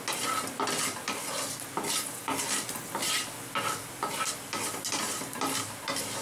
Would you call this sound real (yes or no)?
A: yes